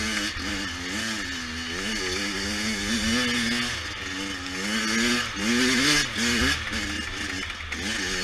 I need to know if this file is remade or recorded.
recorded